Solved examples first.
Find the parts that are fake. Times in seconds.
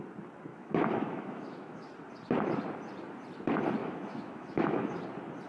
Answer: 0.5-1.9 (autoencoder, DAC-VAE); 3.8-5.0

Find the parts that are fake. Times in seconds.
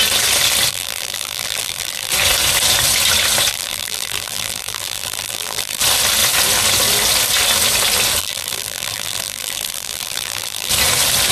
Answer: 0.7-2.1 (vocoder, BigVGAN v2); 3.5-5.8; 8.2-10.7